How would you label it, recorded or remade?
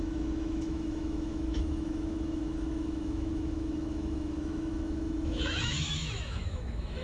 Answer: remade